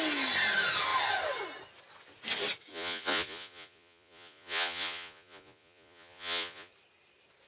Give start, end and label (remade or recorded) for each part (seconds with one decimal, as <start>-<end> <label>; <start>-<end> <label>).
0.0-2.7 recorded; 2.7-6.7 remade; 6.7-7.5 recorded